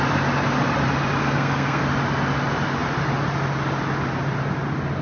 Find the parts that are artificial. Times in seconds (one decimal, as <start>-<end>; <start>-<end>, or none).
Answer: 1.2-1.8